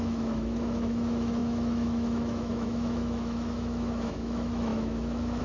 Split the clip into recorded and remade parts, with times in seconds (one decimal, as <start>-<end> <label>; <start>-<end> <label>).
0.0-5.4 remade